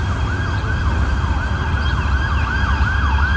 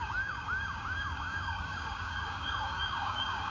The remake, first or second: second